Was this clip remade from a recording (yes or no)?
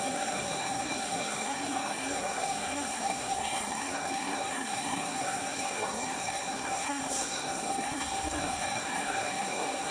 yes